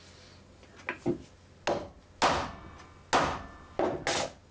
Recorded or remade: recorded